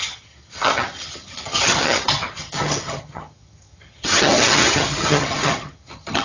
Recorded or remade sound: remade